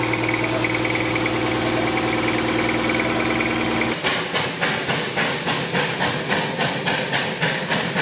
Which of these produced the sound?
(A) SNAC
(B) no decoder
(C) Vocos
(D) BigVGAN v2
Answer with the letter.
B